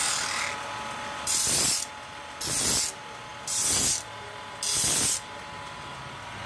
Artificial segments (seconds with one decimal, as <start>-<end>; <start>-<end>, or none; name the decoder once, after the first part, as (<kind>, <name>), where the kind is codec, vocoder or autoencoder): none